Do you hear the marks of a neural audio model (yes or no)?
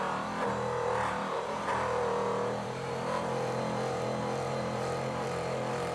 yes